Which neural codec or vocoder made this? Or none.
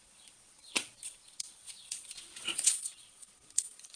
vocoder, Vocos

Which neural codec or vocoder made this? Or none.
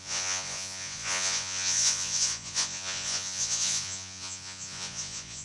vocoder, Vocos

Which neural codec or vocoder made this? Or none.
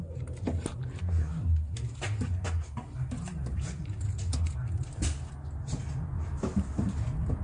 none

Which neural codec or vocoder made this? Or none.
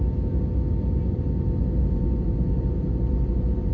none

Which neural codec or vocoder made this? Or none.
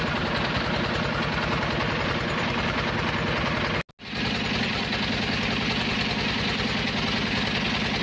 none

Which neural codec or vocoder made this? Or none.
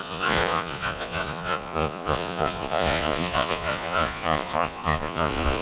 vocoder, Vocos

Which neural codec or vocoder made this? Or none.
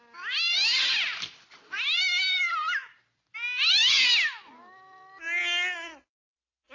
none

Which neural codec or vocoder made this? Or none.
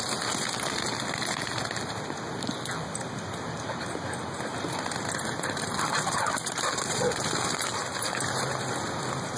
none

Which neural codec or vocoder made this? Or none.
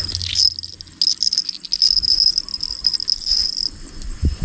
none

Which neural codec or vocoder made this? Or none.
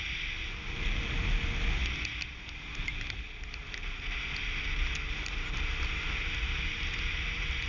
none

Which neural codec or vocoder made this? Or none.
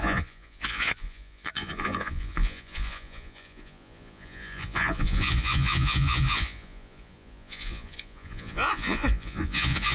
vocoder, Vocos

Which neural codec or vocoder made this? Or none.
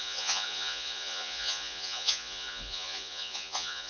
vocoder, Vocos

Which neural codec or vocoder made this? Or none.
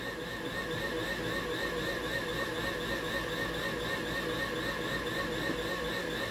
none